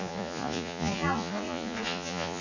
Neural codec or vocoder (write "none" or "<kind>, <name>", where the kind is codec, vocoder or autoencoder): vocoder, Vocos